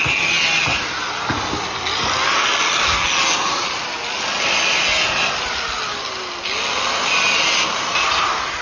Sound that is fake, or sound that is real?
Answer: real